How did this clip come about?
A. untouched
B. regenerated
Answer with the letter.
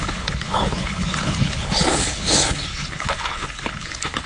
B